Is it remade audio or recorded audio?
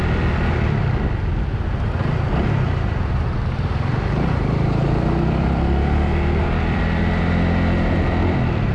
recorded